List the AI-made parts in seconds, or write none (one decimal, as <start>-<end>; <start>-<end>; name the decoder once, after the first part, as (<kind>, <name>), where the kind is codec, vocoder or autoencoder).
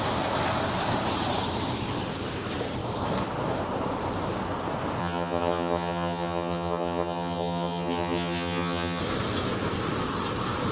5.0-9.0 (vocoder, HiFi-GAN)